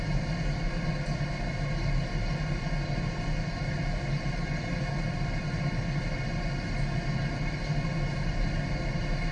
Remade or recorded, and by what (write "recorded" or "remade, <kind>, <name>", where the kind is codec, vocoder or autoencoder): recorded